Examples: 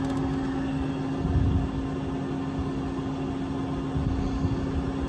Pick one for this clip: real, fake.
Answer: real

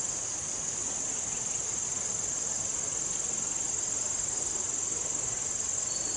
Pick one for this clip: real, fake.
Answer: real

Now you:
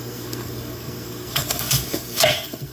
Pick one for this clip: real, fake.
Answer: fake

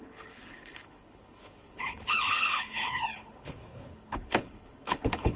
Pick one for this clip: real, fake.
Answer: fake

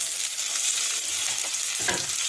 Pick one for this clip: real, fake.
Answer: real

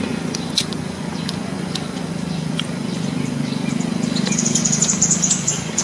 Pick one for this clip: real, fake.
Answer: fake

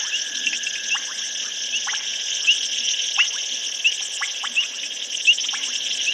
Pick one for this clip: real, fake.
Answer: real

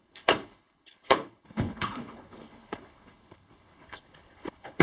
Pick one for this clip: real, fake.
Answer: fake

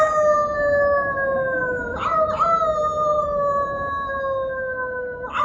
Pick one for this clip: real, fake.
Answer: real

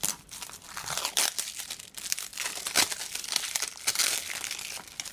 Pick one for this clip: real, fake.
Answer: fake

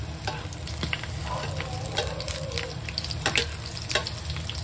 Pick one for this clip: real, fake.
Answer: real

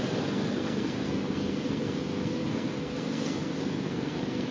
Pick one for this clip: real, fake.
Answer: fake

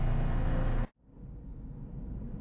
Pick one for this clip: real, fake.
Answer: real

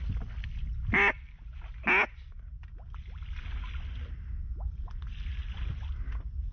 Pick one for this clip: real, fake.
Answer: real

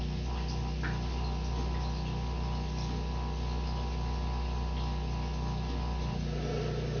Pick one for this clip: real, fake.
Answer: real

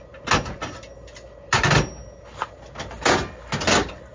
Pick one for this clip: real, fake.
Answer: real